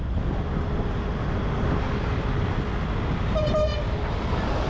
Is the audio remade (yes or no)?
no